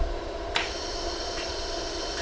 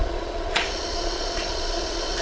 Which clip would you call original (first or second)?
first